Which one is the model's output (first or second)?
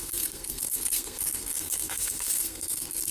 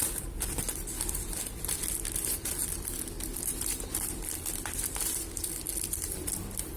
first